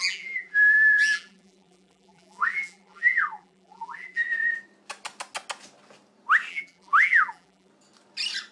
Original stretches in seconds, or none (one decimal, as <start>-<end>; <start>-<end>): 4.2-6.5; 7.7-8.5